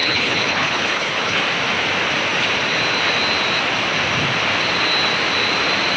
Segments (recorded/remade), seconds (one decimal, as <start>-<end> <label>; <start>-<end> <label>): 0.0-1.4 remade; 1.4-6.0 recorded